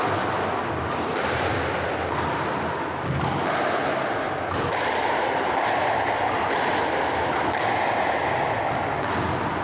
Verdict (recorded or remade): recorded